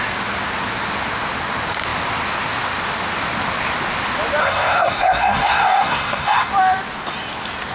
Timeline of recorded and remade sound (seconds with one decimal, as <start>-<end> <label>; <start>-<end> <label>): 0.0-4.4 recorded; 4.4-6.5 remade; 6.5-7.7 recorded